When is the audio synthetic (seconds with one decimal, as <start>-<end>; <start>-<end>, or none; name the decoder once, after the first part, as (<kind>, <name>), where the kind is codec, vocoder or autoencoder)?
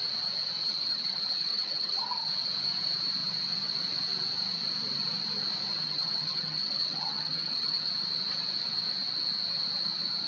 0.6-2.3 (vocoder, HiFi-GAN); 5.7-7.9